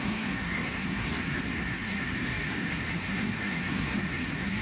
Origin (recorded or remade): remade